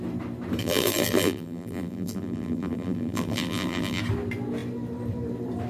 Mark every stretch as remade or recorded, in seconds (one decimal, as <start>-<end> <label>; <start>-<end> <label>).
0.0-0.6 recorded; 0.6-4.0 remade; 4.0-5.7 recorded